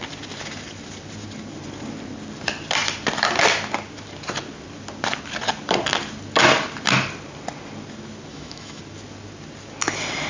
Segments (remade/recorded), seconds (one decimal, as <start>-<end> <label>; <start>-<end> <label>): 0.0-8.3 recorded; 8.3-8.8 remade; 8.8-10.3 recorded